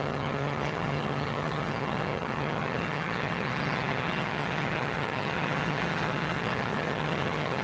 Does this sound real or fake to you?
fake